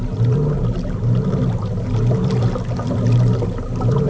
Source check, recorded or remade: recorded